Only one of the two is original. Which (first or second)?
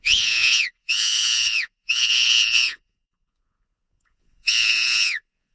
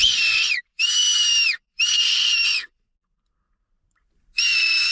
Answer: second